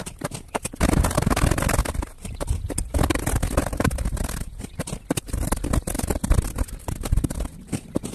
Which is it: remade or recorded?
remade